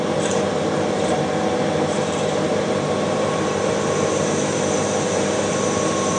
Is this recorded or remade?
remade